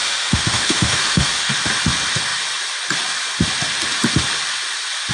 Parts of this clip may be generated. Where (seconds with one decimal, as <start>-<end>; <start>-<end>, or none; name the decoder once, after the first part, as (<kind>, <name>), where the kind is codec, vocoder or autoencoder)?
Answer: 0.0-1.5 (autoencoder, DAC-VAE)